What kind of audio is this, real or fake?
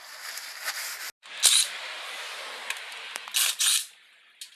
real